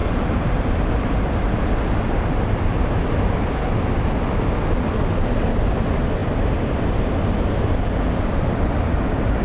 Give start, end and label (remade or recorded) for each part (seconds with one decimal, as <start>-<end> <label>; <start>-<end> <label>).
0.0-0.9 remade; 0.9-9.4 recorded